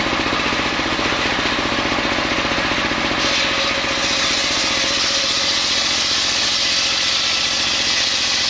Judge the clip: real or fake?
real